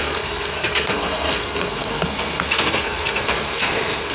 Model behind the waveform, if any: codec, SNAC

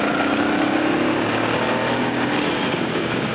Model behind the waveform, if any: codec, DAC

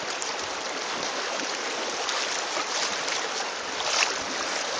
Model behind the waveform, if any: none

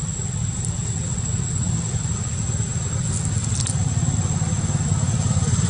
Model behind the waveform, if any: none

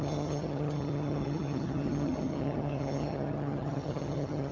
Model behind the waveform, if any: vocoder, HiFi-GAN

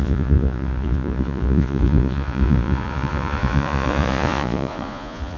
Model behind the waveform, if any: vocoder, Vocos